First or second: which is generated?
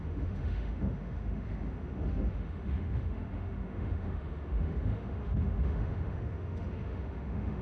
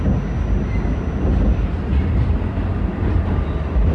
first